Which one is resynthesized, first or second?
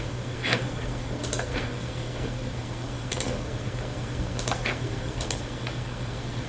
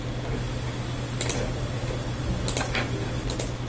first